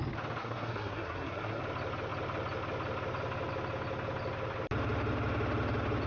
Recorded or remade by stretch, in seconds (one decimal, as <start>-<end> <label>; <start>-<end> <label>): 0.0-0.4 recorded; 0.4-1.6 remade; 1.6-6.1 recorded